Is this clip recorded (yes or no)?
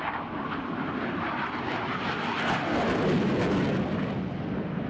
yes